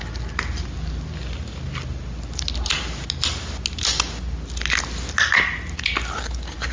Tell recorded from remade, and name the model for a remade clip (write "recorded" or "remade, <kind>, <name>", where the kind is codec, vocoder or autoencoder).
recorded